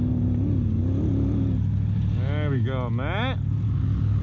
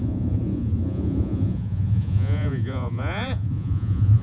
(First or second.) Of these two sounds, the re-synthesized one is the second